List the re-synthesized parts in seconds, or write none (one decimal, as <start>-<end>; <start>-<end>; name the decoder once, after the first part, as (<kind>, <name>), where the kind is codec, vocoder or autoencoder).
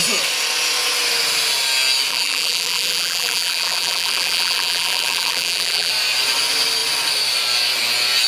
2.1-5.9 (vocoder, BigVGAN v2)